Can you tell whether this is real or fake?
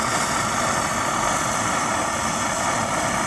real